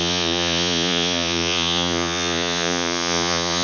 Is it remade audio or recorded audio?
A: remade